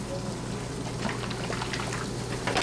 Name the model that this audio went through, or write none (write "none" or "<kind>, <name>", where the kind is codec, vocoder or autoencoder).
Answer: none